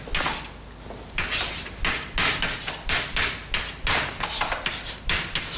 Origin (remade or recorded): recorded